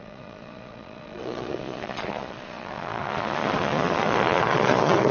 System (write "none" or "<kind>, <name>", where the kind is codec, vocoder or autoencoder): vocoder, Vocos